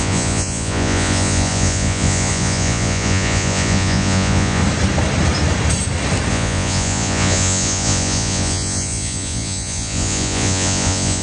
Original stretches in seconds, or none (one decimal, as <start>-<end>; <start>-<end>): 4.6-6.3